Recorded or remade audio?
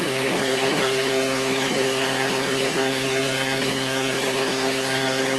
remade